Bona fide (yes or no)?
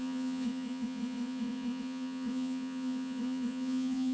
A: no